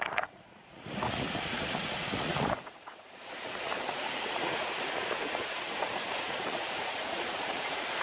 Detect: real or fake fake